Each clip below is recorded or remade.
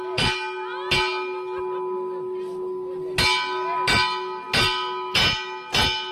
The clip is recorded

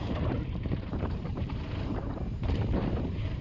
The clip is remade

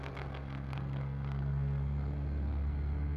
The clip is remade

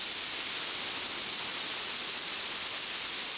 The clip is recorded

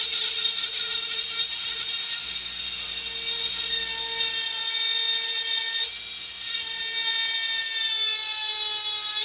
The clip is recorded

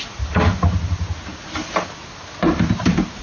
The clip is recorded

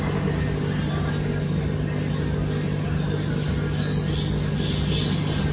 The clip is recorded